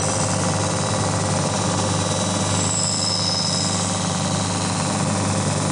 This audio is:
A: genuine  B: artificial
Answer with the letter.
A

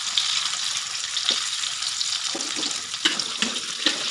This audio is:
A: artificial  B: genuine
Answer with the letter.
B